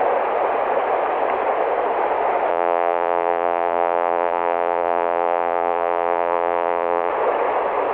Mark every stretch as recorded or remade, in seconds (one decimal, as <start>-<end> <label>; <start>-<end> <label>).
0.0-2.5 recorded; 2.5-7.1 remade; 7.1-7.9 recorded